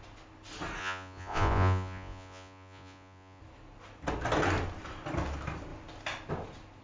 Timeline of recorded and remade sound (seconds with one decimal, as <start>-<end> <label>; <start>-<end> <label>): 0.0-0.8 recorded; 0.8-3.4 remade; 3.4-6.8 recorded